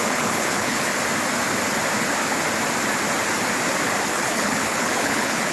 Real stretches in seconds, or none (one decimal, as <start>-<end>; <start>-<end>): 0.9-4.1